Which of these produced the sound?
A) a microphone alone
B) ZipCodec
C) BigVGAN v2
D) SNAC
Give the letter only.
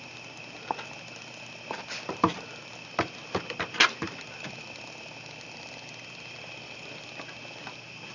A